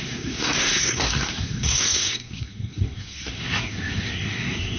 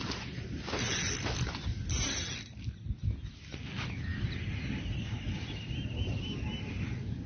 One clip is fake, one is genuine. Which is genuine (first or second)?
second